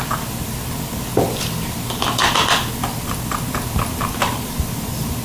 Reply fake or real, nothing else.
real